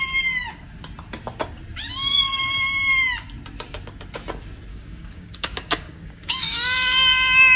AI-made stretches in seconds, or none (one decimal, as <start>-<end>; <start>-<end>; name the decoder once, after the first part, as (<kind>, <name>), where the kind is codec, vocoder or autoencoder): 4.7-6.5 (codec, DAC)